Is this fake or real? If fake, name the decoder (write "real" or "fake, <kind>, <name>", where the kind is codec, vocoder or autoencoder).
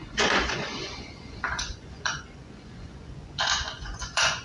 fake, vocoder, Vocos